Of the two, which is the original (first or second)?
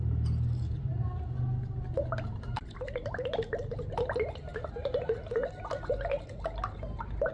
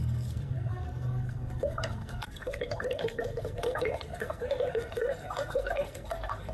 first